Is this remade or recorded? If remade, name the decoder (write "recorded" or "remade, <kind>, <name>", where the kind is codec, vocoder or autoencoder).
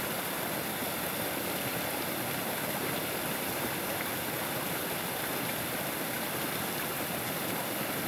recorded